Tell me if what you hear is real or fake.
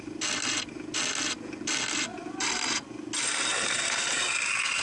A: real